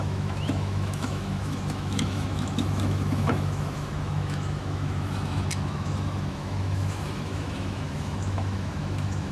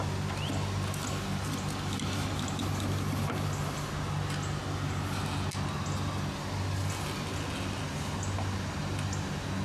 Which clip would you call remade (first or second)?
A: first